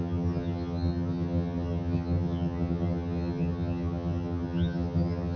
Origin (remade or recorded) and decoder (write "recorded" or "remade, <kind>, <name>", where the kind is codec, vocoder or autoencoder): remade, vocoder, HiFi-GAN